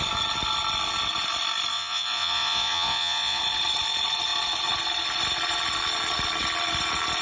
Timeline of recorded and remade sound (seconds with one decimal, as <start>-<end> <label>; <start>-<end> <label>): 0.0-1.7 recorded; 1.7-3.4 remade; 3.4-7.2 recorded